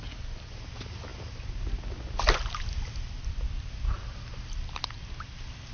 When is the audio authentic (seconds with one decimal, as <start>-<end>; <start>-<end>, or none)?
0.0-5.7